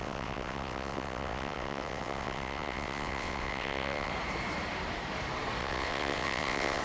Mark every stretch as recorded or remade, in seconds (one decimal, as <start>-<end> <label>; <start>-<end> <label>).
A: 0.0-4.1 remade; 4.1-5.6 recorded; 5.6-6.8 remade

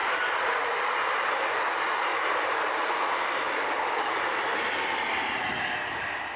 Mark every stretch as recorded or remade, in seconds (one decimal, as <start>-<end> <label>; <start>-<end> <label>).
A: 0.0-1.6 remade; 1.6-6.4 recorded